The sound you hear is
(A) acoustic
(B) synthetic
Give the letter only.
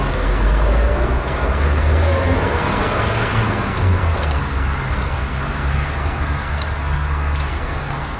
B